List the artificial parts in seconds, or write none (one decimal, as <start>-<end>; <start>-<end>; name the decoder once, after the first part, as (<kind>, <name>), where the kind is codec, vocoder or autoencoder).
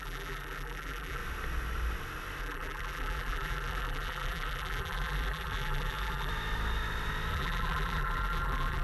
0.0-1.2 (vocoder, BigVGAN v2); 2.4-6.3; 7.3-8.8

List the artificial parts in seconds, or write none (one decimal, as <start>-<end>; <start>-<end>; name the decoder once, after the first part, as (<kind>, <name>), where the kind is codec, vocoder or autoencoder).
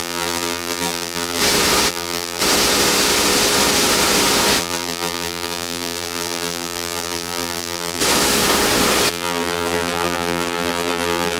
0.0-1.4 (vocoder, BigVGAN v2); 1.9-2.4; 4.6-8.0; 9.1-11.4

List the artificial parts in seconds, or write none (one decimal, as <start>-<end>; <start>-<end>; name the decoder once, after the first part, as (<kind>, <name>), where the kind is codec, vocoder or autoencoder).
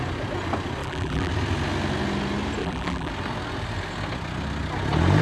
0.8-1.3 (vocoder, BigVGAN v2); 2.6-3.1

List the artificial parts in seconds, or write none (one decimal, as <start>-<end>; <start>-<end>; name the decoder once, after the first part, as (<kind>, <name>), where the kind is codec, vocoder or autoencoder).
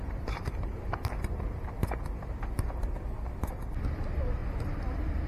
0.0-0.7 (vocoder, BigVGAN v2); 2.8-4.4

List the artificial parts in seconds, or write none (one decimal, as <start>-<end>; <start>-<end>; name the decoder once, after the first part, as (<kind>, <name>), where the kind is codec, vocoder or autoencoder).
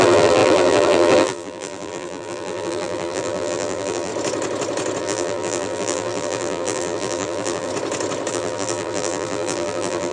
0.0-4.1 (vocoder, BigVGAN v2); 5.0-7.7; 8.3-10.1